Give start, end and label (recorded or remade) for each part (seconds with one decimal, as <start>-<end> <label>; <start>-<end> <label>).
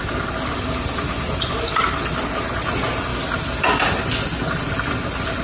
0.0-5.4 recorded